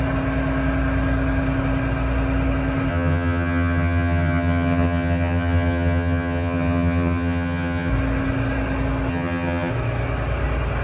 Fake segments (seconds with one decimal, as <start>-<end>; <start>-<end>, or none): 2.9-7.9; 9.1-9.7

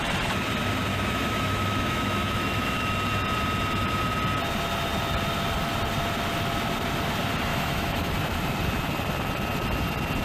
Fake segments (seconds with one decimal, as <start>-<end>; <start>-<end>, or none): 0.9-2.9; 7.5-8.1

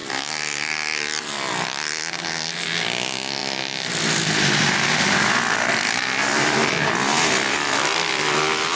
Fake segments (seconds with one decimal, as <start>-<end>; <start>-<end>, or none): 0.0-1.5; 3.4-6.7

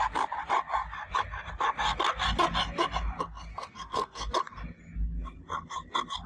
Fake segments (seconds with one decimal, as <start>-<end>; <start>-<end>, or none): 3.5-4.3